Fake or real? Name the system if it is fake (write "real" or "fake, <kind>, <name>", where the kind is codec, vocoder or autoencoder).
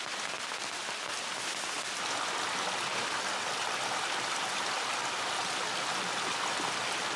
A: real